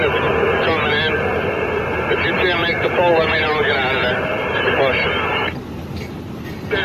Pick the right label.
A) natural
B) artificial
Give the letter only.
A